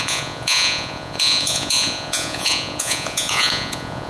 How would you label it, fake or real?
fake